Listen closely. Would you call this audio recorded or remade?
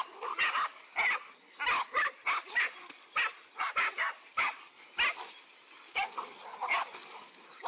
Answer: recorded